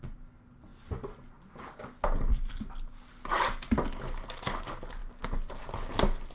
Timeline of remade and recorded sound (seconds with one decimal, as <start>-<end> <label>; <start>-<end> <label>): 0.0-6.3 recorded

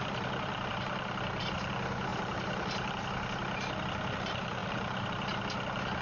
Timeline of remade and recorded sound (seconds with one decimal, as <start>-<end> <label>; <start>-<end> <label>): 0.0-0.7 recorded; 0.7-1.7 remade; 1.7-2.1 recorded; 2.1-3.0 remade; 3.0-4.6 recorded; 4.6-5.4 remade; 5.4-6.0 recorded

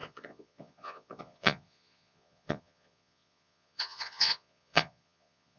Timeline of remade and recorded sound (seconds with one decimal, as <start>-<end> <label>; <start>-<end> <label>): 0.0-5.6 remade

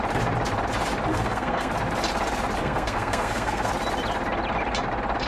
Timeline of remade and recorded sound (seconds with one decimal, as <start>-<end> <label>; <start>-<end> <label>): 0.0-1.1 recorded; 1.1-1.7 remade; 1.7-2.6 recorded; 2.6-3.7 remade; 3.7-5.3 recorded